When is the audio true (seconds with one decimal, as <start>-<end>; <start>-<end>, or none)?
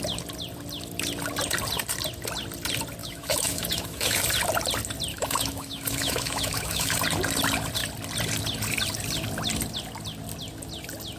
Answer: 0.0-3.0; 4.2-5.1; 7.0-11.2